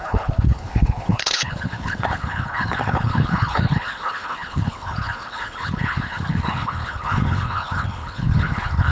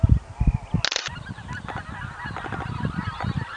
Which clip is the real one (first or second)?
second